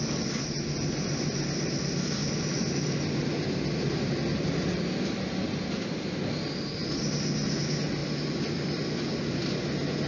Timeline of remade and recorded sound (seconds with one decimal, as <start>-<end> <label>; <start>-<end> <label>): 0.0-2.2 recorded; 2.2-5.2 remade; 5.2-10.1 recorded